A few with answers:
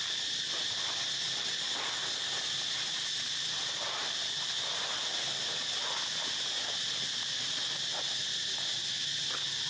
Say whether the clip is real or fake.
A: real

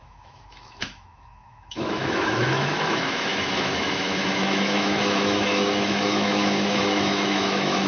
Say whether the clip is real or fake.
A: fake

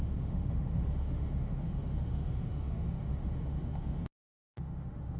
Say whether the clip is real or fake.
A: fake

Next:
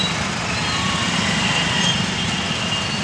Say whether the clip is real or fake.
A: real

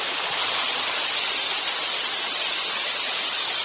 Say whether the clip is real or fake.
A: real